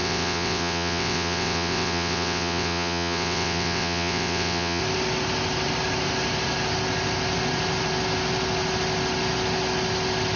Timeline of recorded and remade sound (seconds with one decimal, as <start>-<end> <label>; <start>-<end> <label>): 0.0-4.8 remade; 4.8-10.4 recorded